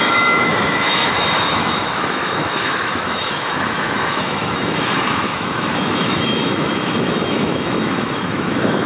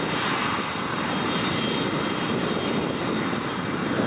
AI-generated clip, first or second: first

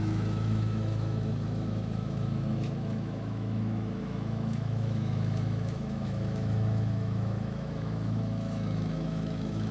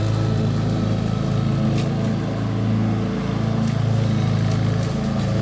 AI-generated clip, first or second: first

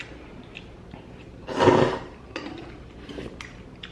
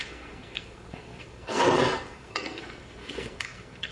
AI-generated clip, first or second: second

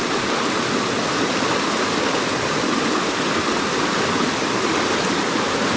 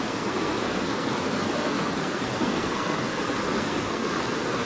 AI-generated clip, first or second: second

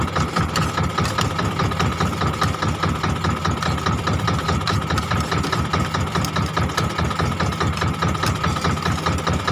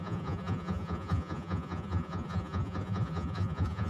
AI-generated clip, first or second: second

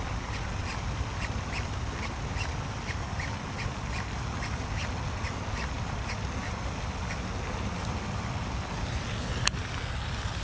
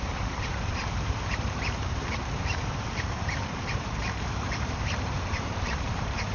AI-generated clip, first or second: second